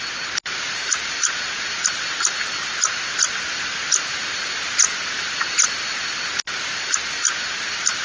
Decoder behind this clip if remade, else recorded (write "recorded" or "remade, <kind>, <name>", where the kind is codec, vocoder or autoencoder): recorded